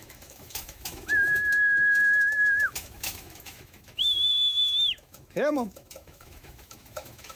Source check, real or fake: fake